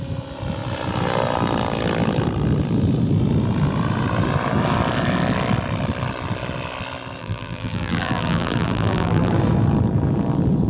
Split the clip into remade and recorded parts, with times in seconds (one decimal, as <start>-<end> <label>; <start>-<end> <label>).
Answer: 0.0-7.2 recorded; 7.2-9.3 remade; 9.3-10.7 recorded